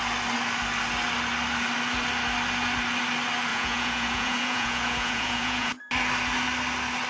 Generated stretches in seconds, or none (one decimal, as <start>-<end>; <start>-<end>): 3.5-5.8